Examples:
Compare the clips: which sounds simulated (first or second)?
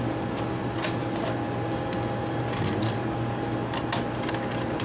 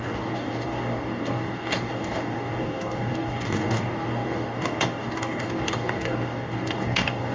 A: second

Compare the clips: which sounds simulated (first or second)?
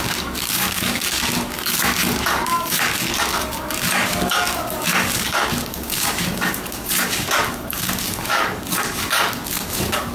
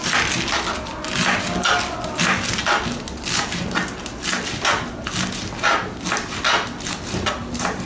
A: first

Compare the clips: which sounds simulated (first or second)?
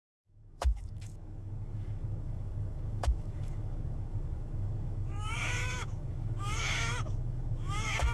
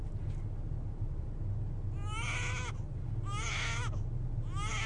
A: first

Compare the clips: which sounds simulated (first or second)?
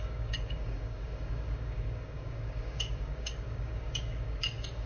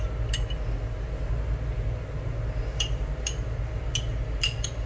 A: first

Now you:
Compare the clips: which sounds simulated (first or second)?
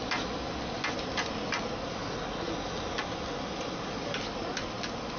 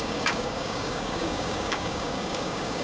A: second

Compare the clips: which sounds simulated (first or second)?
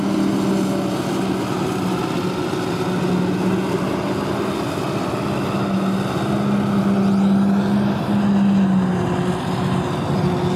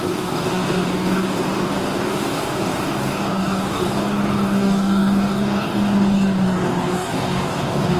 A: second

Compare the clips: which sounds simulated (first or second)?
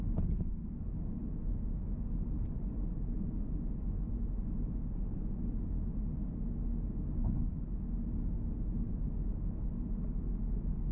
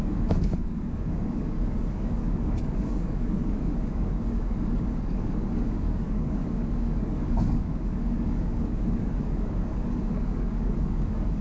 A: second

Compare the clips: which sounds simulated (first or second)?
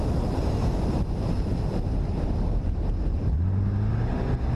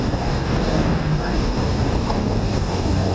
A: second